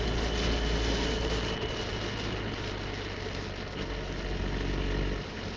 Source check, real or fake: real